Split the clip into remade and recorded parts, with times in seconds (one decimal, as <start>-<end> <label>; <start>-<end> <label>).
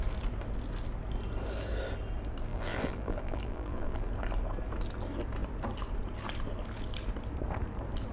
0.0-2.5 recorded; 2.5-4.1 remade; 4.1-8.1 recorded